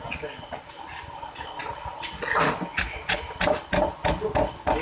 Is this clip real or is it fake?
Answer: real